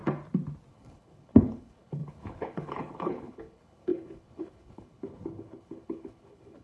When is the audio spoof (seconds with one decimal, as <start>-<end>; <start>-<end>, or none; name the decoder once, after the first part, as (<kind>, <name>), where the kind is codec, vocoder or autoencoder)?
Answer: 0.7-6.6 (codec, HILCodec)